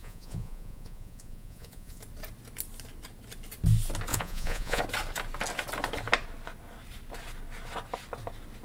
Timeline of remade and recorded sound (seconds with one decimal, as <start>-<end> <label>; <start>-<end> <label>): 0.0-2.0 remade; 2.0-4.1 recorded; 4.1-4.8 remade; 4.8-8.6 recorded